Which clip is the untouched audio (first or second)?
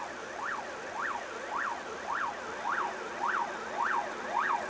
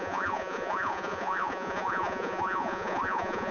first